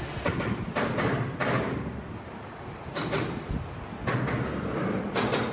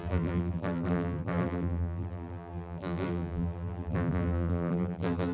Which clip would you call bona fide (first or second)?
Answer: first